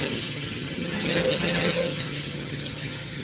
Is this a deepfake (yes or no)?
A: yes